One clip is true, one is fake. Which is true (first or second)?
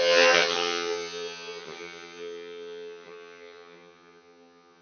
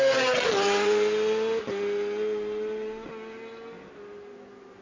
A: second